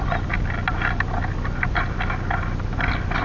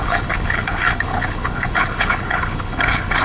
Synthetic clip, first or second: second